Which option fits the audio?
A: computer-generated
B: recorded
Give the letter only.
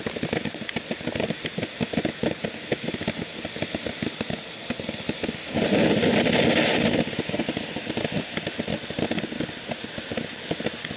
B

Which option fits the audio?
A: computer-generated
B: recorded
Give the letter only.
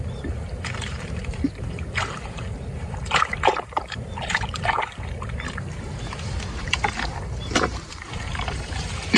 A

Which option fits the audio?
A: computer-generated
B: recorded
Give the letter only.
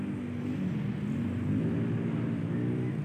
B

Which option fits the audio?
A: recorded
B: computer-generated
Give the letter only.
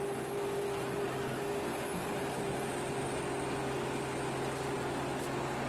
A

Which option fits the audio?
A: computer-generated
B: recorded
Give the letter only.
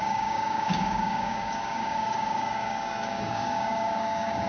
A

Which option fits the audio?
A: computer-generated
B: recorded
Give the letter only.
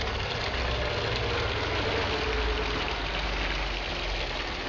B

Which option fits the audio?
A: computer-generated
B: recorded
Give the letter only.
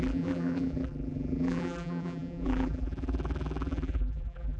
A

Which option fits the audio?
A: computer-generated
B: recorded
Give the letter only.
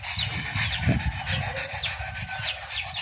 B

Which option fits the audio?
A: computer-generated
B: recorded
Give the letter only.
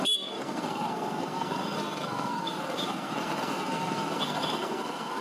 A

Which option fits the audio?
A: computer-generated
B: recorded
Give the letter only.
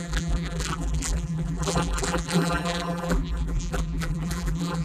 A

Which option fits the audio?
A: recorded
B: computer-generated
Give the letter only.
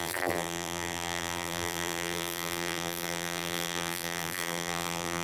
B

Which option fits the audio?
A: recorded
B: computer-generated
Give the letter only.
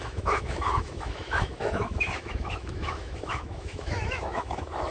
B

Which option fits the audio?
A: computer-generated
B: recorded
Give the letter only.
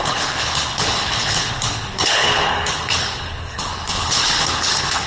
A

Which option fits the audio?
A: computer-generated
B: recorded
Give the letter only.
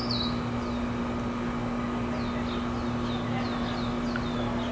B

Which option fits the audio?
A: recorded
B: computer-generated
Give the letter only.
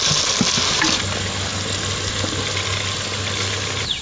A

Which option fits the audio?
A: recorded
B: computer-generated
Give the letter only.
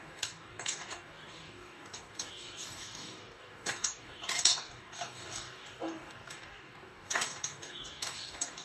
B